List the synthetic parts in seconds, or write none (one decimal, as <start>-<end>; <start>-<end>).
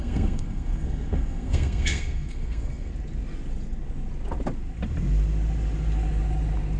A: 0.0-2.9